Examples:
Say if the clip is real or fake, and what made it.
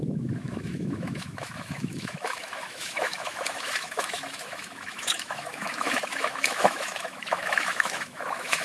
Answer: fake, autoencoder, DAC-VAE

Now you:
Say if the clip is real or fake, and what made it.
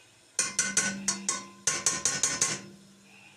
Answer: real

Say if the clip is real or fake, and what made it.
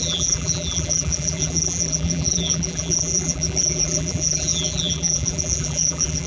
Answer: fake, vocoder, BigVGAN v2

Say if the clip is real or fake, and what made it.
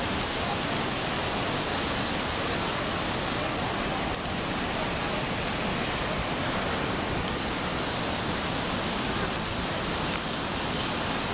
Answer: real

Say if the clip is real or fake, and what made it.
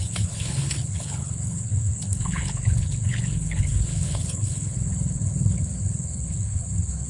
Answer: fake, codec, HILCodec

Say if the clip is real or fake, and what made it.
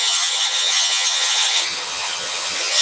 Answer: fake, vocoder, HiFi-GAN